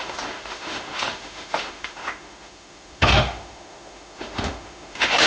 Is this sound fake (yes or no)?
yes